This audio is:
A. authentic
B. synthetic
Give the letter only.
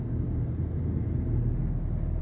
A